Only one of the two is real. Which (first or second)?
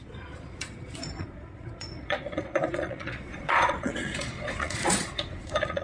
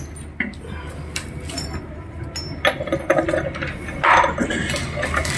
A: second